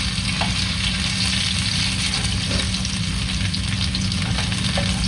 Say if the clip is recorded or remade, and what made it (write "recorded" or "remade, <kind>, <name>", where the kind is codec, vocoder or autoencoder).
recorded